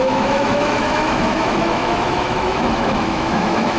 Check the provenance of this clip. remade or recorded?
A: remade